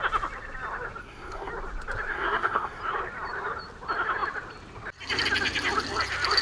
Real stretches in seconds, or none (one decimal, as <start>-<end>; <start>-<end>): 0.0-1.0; 1.5-2.1; 2.8-6.4